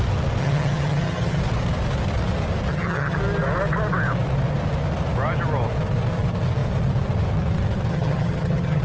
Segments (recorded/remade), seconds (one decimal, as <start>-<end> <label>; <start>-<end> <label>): 0.0-0.4 recorded; 0.4-1.4 remade; 1.4-2.7 recorded; 2.7-3.2 remade; 3.2-7.9 recorded; 7.9-8.8 remade